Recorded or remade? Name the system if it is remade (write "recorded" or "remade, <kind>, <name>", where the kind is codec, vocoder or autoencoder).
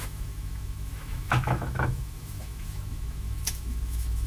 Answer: remade, autoencoder, DAC-VAE